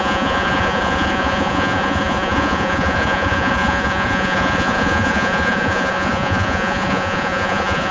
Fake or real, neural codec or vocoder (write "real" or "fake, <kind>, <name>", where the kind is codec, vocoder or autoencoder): fake, vocoder, Vocos